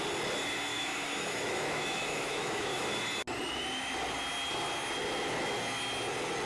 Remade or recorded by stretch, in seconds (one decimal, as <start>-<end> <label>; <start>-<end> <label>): 0.0-0.7 recorded; 0.7-3.0 remade; 3.0-6.5 recorded